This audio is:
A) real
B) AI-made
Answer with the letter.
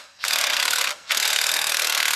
B